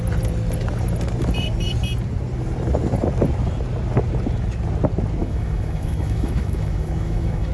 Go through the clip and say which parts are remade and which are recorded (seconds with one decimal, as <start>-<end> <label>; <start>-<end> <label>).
0.0-5.2 recorded; 5.2-7.5 remade